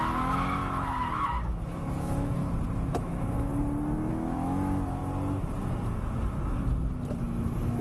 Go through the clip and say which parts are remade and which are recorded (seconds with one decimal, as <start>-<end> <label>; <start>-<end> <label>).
0.0-2.4 remade; 2.4-3.0 recorded; 3.0-3.5 remade; 3.5-4.1 recorded; 4.1-5.0 remade; 5.0-7.2 recorded; 7.2-7.8 remade